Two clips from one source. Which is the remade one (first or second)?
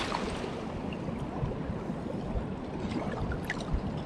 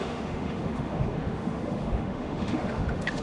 second